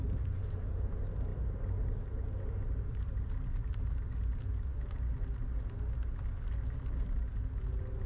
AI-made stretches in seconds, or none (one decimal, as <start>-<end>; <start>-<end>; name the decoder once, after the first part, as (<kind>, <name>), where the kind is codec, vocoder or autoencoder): none